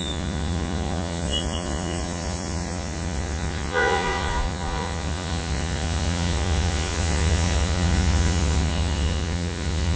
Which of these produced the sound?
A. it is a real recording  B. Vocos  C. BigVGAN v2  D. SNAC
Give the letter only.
B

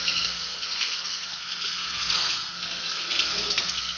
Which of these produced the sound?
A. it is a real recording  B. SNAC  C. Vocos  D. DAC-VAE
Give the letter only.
B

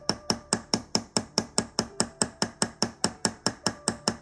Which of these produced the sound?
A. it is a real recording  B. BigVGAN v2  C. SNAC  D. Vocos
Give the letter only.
B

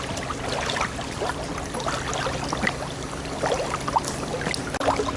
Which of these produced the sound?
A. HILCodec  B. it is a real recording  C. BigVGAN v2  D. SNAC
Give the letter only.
B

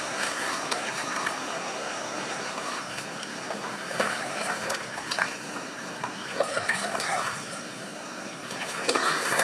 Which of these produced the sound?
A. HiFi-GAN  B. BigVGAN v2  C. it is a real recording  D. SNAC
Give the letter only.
D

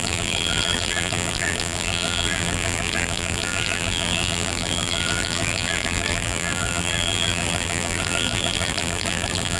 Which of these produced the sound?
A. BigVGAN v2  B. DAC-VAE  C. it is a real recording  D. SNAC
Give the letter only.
A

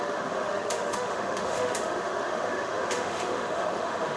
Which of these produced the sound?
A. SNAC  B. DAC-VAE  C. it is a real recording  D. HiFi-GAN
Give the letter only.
B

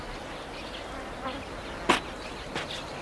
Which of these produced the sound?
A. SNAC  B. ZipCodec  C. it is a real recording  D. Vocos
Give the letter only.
C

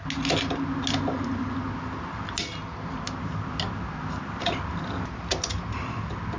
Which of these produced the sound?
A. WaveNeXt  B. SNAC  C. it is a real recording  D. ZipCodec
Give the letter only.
C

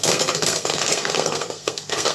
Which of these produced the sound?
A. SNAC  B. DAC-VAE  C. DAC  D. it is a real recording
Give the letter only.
A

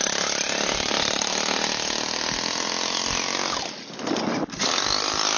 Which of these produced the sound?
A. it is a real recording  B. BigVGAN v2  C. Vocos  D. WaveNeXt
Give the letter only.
A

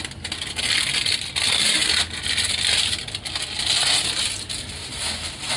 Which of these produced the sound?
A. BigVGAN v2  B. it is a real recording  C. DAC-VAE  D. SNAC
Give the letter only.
B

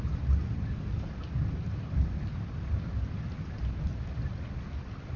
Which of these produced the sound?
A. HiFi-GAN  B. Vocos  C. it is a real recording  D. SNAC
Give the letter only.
C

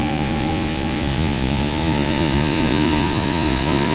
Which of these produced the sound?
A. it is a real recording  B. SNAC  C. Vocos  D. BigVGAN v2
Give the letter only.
C